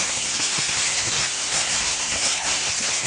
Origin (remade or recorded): remade